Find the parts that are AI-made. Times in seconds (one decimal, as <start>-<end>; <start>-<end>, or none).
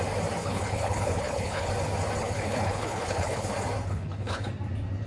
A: 0.4-1.7; 2.2-3.5; 3.9-4.5